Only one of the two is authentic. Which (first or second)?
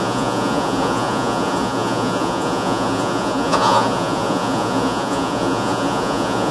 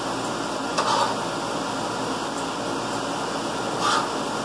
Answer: second